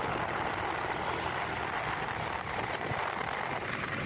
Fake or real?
real